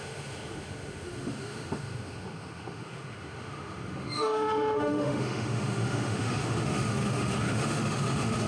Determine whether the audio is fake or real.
fake